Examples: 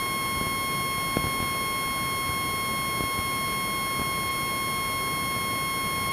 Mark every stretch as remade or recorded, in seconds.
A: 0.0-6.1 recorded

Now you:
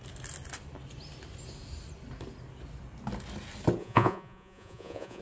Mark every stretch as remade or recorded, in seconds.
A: 0.0-3.8 recorded; 3.8-5.2 remade

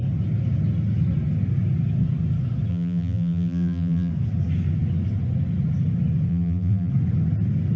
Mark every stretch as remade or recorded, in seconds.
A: 0.0-2.7 recorded; 2.7-4.1 remade; 4.1-6.3 recorded; 6.3-6.9 remade; 6.9-7.8 recorded

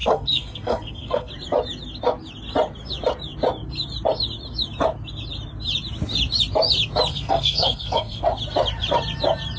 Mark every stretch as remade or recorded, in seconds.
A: 0.0-1.3 remade; 1.3-7.1 recorded; 7.1-8.2 remade; 8.2-9.6 recorded